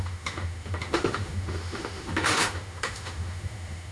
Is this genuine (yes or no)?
no